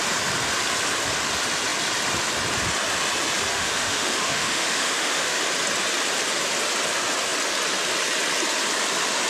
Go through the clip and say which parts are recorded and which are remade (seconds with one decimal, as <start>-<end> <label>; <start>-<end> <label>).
0.0-3.5 recorded; 3.5-5.4 remade; 5.4-9.3 recorded